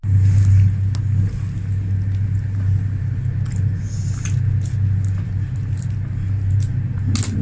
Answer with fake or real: real